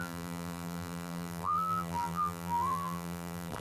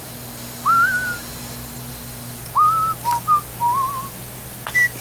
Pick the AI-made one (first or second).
first